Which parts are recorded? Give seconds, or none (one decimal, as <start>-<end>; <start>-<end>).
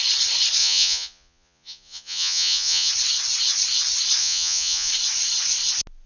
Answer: 0.0-0.6; 2.9-4.2; 4.9-6.1